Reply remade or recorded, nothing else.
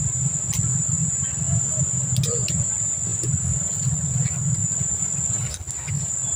recorded